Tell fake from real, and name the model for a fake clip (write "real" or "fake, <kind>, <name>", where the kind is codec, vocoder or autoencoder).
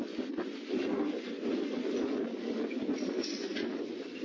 real